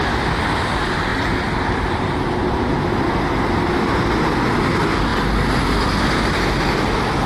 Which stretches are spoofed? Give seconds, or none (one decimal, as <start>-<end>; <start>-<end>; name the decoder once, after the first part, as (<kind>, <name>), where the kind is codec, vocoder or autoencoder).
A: 1.1-2.7 (vocoder, BigVGAN v2)